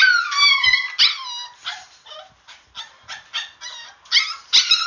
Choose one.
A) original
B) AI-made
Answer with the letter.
A